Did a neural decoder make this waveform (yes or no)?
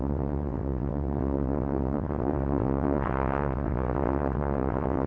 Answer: yes